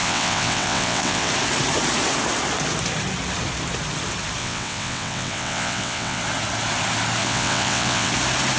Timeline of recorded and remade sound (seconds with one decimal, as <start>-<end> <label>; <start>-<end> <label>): 0.0-1.3 remade; 1.3-4.4 recorded; 4.4-6.2 remade; 6.2-7.2 recorded; 7.2-8.1 remade; 8.1-8.6 recorded